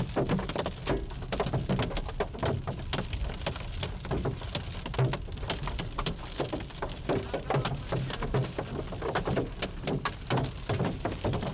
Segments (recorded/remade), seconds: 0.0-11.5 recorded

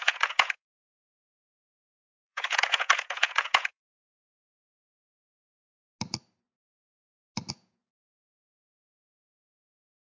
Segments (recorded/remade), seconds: 0.0-5.7 remade; 5.7-7.5 recorded; 7.5-10.0 remade

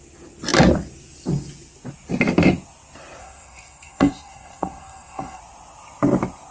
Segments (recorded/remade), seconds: 0.0-3.2 recorded; 3.2-5.4 remade; 5.4-6.5 recorded

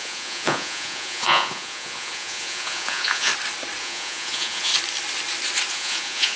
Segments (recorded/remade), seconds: 0.0-3.3 remade; 3.3-3.8 recorded; 3.8-4.7 remade; 4.7-5.7 recorded; 5.7-6.4 remade